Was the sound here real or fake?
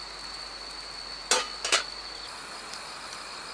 real